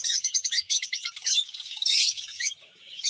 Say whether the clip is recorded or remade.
remade